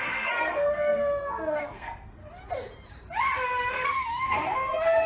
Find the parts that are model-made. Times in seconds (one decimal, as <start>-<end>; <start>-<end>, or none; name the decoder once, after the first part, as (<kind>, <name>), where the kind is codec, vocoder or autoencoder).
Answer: 0.0-2.2 (codec, SNAC); 3.7-5.1